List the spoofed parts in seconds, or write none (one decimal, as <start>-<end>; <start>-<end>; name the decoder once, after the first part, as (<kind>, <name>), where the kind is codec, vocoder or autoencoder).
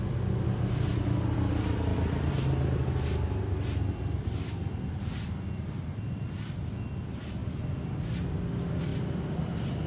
8.9-9.9 (vocoder, BigVGAN v2)